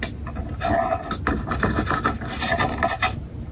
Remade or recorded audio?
recorded